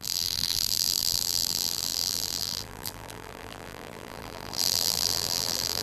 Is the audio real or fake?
fake